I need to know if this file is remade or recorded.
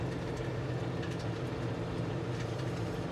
recorded